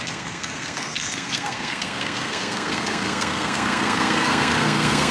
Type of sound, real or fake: fake